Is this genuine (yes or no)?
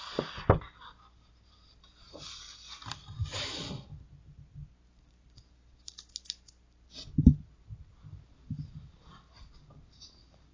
yes